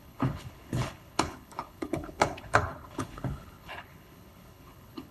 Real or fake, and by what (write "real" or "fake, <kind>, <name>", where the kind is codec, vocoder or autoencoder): fake, codec, HILCodec